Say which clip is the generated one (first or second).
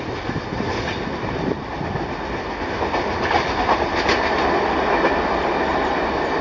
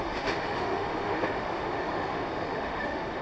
second